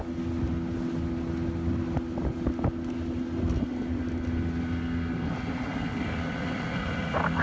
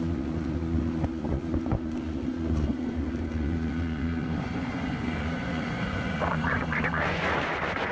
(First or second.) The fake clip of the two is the second